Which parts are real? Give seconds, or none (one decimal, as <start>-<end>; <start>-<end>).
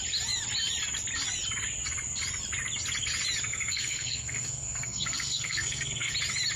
0.0-3.5; 6.1-6.6